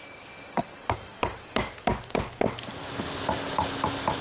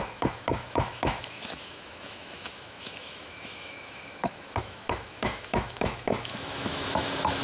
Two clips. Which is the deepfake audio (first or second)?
second